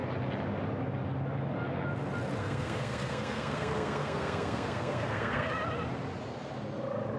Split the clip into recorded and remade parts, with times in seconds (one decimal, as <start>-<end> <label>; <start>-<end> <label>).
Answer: 0.0-2.4 recorded; 2.4-5.5 remade; 5.5-7.2 recorded